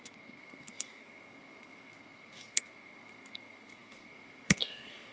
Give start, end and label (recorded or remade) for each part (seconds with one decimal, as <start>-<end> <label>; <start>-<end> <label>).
0.0-5.1 remade